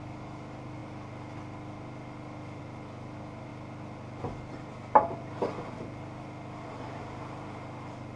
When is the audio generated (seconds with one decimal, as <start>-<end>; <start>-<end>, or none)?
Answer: none